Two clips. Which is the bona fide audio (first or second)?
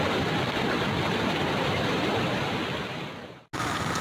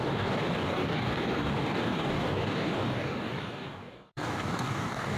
first